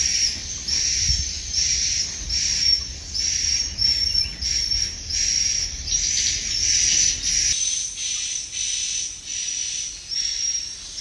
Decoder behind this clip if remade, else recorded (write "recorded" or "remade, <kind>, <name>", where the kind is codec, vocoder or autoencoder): recorded